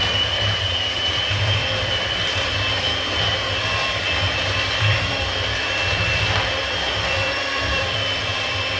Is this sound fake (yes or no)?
yes